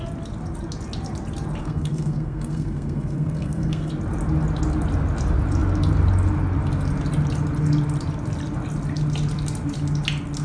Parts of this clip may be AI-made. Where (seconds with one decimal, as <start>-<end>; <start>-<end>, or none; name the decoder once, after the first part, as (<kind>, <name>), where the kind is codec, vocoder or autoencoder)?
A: 1.6-3.9 (codec, SNAC)